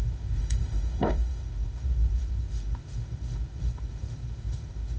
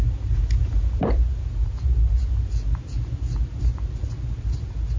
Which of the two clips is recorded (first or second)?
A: second